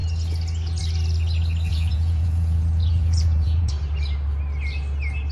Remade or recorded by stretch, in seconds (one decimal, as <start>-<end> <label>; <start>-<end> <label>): 0.0-1.7 recorded; 1.7-3.7 remade; 3.7-5.3 recorded